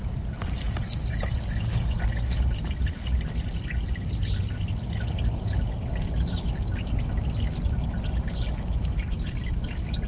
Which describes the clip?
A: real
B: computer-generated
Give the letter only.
A